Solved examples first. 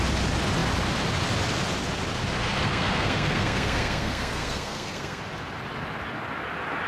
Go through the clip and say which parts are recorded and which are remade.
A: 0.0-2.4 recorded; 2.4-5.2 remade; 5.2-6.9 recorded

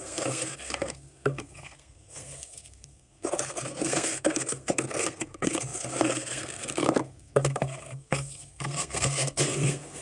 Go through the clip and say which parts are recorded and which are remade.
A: 0.0-10.0 remade